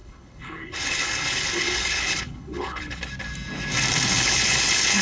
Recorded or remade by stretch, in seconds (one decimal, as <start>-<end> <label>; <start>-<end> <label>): 0.0-3.0 remade; 3.0-4.1 recorded; 4.1-5.0 remade